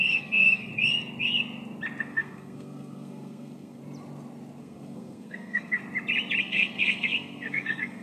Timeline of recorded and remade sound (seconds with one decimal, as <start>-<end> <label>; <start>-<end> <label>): 0.0-0.7 remade; 0.7-2.0 recorded; 2.0-3.8 remade; 3.8-4.6 recorded; 4.6-5.8 remade; 5.8-6.4 recorded; 6.4-8.0 remade